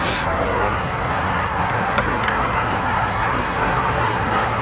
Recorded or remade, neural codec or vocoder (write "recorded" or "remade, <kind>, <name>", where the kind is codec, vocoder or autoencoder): remade, codec, SNAC